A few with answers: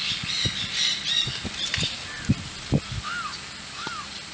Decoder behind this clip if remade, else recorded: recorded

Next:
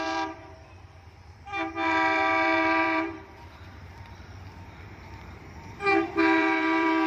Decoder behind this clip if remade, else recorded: remade, vocoder, BigVGAN v2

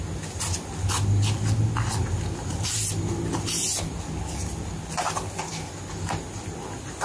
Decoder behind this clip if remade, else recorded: recorded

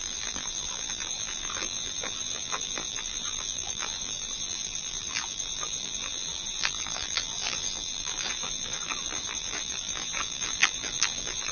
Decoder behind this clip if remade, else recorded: remade, vocoder, BigVGAN v2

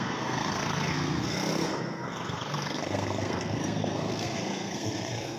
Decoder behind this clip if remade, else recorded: remade, codec, SNAC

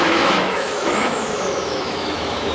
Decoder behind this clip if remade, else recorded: remade, autoencoder, DAC-VAE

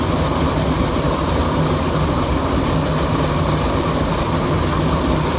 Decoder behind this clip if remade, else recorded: recorded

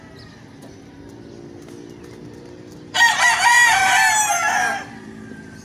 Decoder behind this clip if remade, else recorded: recorded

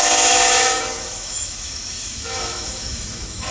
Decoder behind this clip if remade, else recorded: remade, autoencoder, DAC-VAE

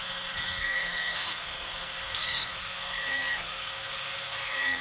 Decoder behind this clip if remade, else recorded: remade, codec, SNAC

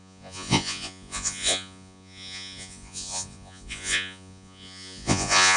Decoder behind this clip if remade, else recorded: remade, vocoder, Vocos